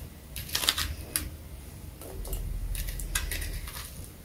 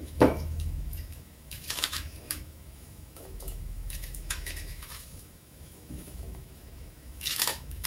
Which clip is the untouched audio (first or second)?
first